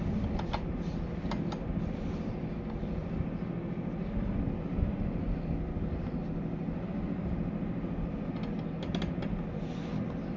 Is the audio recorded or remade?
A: recorded